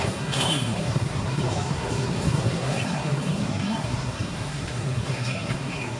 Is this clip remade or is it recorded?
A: remade